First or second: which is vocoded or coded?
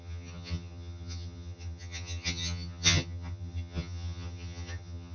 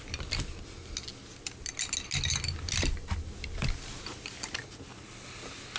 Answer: first